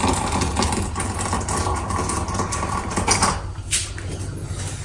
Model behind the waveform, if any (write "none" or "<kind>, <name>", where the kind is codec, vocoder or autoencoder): none